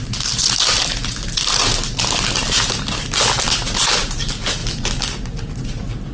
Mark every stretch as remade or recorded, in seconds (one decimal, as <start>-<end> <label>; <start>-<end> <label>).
0.0-6.1 recorded

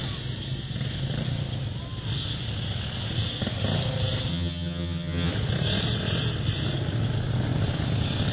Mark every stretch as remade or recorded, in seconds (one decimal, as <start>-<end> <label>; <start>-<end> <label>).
0.0-4.3 recorded; 4.3-5.3 remade; 5.3-8.3 recorded

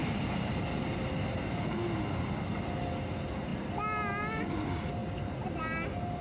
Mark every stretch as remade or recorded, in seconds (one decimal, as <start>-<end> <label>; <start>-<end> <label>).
0.0-0.6 remade; 0.6-5.0 recorded; 5.0-5.6 remade; 5.6-6.2 recorded

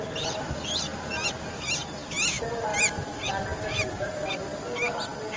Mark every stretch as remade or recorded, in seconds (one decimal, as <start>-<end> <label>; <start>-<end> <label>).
0.0-5.4 recorded

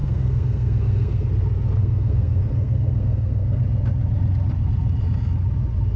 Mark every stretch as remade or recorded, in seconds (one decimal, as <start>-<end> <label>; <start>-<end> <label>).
0.0-1.3 remade; 1.3-1.8 recorded; 1.8-3.6 remade; 3.6-6.0 recorded